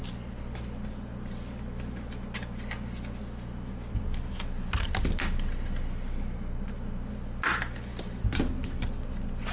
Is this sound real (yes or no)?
yes